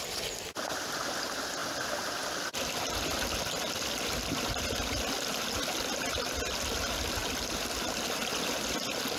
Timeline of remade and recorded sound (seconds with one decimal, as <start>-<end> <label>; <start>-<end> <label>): 0.0-9.2 recorded